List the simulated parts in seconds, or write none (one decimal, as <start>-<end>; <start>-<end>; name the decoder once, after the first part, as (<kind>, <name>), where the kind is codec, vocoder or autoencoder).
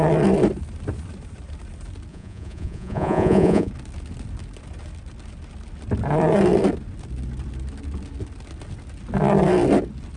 2.1-3.7 (vocoder, Vocos)